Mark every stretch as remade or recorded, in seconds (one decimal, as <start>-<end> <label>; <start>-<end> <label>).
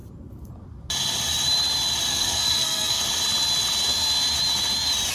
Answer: 0.0-2.1 recorded; 2.1-3.0 remade; 3.0-5.1 recorded